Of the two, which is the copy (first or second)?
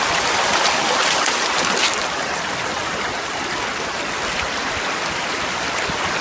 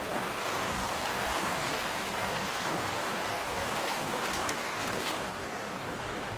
second